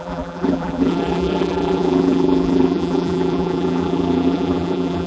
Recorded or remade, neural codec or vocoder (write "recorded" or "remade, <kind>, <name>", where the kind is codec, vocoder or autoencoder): remade, vocoder, BigVGAN v2